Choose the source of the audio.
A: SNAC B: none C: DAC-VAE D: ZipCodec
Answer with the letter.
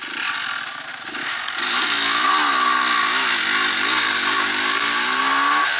B